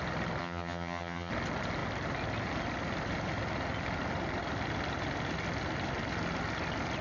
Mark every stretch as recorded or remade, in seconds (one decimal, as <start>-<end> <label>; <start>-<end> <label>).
0.0-0.4 recorded; 0.4-1.3 remade; 1.3-7.0 recorded